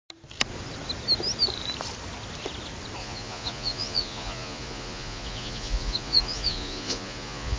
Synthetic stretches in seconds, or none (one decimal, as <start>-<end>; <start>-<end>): 3.0-7.6

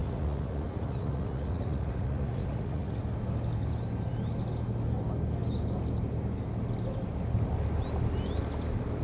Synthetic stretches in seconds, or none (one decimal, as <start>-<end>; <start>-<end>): 0.0-3.0

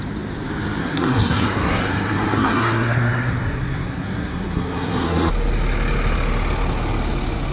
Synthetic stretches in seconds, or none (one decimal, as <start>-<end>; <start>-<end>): 0.8-5.3

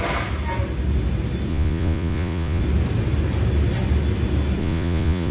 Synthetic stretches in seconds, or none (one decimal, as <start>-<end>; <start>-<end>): 1.5-2.6; 4.6-5.3

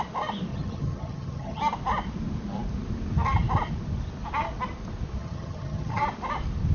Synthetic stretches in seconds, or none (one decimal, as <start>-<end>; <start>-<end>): 0.5-1.6; 5.2-6.0